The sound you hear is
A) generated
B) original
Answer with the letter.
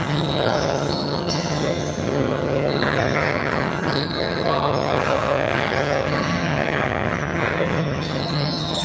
A